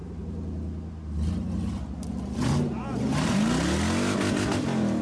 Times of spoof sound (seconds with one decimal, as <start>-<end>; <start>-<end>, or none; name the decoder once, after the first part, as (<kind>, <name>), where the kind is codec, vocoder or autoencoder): none